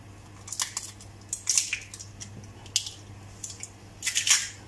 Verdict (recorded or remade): recorded